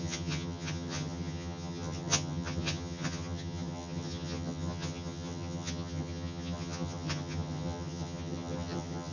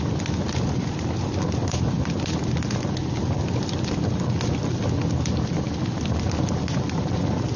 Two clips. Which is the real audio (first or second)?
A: second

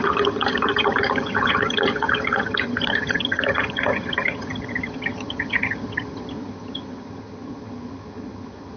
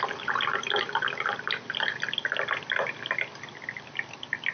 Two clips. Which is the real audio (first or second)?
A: second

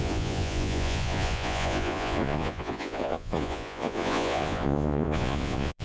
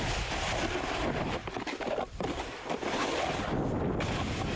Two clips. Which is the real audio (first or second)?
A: second